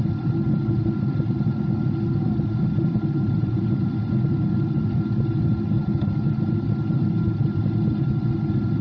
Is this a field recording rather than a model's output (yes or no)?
yes